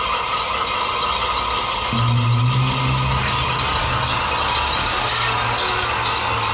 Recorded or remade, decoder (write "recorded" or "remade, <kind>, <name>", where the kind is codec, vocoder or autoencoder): recorded